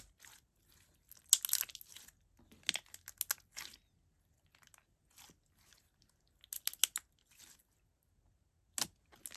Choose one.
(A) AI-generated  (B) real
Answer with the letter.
B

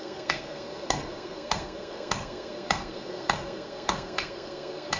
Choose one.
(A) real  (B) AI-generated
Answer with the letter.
B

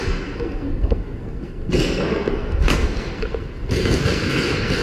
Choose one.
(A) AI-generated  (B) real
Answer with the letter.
A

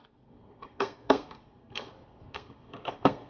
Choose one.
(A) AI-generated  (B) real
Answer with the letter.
A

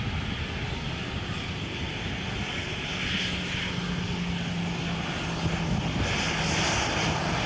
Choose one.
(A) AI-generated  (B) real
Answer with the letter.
B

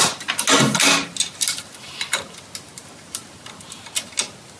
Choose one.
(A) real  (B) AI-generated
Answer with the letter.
A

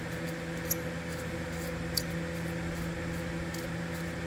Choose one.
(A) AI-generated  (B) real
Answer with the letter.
B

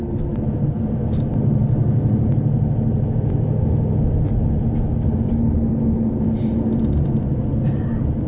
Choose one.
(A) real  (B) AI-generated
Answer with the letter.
A